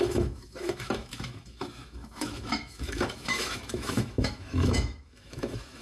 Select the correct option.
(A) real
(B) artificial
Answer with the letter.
B